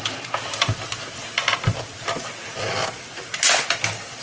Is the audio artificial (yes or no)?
yes